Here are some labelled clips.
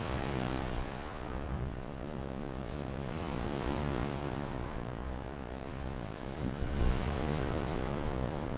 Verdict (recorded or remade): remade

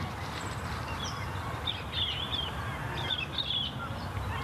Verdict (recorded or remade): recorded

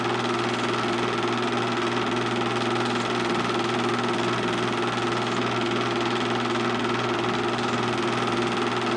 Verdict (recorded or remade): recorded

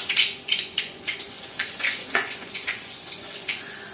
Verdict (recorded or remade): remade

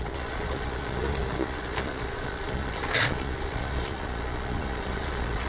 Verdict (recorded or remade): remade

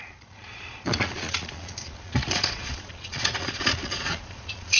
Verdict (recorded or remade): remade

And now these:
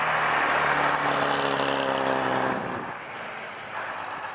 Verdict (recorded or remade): recorded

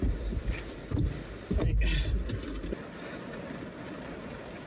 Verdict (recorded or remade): recorded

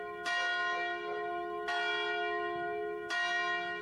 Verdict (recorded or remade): recorded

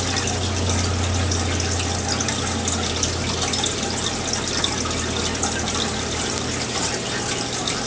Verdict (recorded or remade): recorded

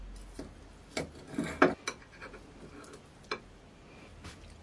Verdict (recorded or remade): recorded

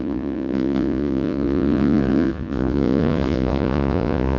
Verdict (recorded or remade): remade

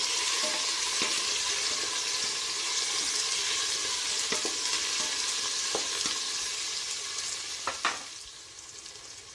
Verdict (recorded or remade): recorded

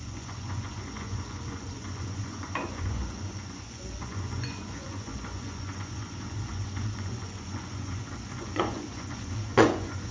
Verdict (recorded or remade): remade